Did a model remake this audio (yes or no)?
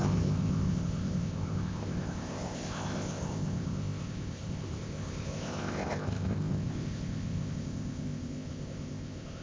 yes